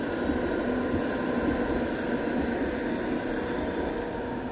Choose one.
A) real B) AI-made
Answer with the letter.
A